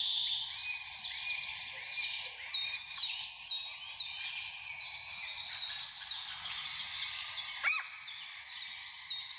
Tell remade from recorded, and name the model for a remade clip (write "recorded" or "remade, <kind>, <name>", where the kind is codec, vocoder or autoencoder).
recorded